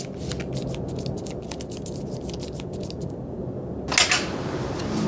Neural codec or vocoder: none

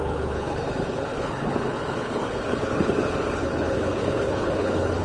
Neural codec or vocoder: codec, HILCodec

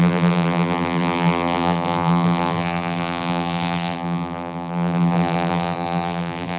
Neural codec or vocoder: vocoder, BigVGAN v2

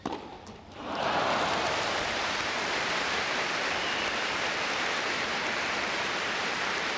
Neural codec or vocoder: vocoder, BigVGAN v2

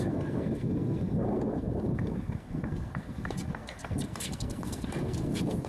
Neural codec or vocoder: codec, SNAC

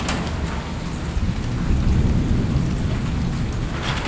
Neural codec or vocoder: none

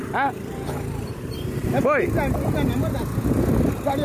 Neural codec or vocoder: none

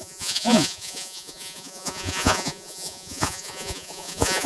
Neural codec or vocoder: vocoder, Vocos